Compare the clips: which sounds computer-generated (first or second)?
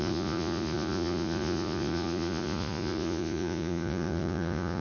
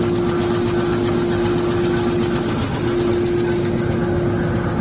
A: first